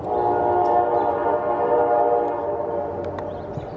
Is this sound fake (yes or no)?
no